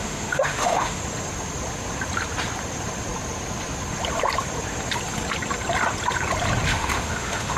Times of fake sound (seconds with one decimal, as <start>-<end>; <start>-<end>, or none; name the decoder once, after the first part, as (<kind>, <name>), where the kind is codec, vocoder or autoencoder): 0.0-1.0 (autoencoder, DAC-VAE); 6.7-7.6